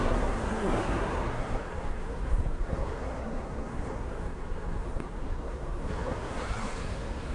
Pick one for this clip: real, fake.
fake